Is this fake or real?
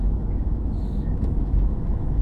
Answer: fake